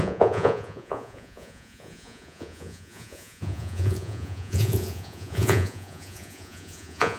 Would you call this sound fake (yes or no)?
yes